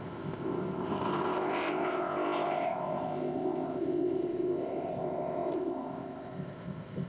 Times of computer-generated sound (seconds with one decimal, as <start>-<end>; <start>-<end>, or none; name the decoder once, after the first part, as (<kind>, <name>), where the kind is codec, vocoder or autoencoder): 0.0-7.1 (codec, ZipCodec)